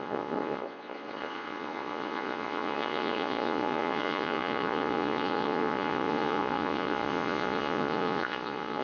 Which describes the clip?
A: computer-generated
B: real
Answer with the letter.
A